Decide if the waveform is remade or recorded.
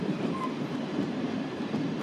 remade